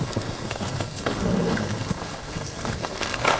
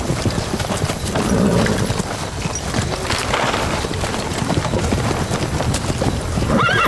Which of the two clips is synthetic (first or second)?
first